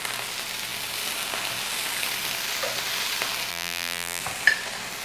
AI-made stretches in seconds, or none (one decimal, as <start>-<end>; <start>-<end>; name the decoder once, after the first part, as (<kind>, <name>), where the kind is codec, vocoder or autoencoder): 3.5-4.2 (vocoder, BigVGAN v2)